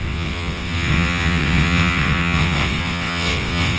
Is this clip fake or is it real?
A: fake